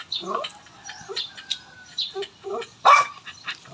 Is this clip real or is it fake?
real